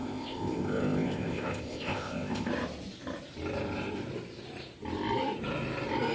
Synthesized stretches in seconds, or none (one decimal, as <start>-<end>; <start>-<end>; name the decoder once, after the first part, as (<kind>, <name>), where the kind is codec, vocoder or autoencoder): 0.0-2.5 (codec, ZipCodec)